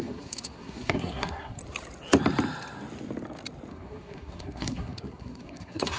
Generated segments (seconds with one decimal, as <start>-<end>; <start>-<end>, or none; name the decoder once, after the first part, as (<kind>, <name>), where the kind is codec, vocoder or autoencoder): 0.0-1.6 (codec, SNAC); 3.7-6.0